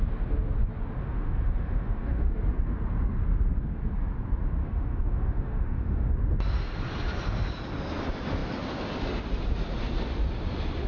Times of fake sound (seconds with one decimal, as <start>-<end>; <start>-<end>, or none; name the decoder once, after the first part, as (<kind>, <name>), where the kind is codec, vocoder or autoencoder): 1.0-2.3 (autoencoder, DAC-VAE); 4.6-6.1